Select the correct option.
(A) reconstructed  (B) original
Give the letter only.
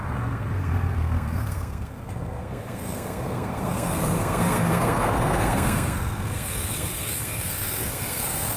A